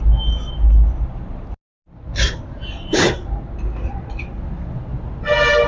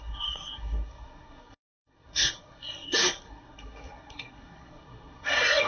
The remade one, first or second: second